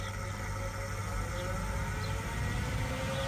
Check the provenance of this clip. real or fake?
real